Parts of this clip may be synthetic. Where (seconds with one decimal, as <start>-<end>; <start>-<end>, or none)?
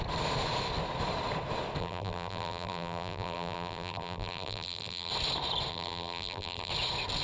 1.8-5.1; 5.7-6.7